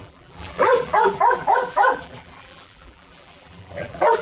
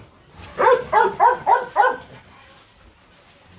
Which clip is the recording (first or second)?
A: second